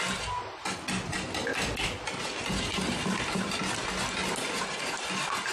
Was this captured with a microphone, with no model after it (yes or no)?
yes